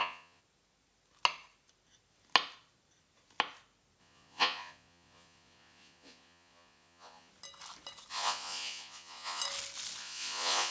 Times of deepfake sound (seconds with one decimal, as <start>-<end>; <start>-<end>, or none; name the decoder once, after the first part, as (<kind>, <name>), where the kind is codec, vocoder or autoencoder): 0.0-0.4 (vocoder, Vocos); 4.0-7.3; 8.1-9.4; 10.0-10.7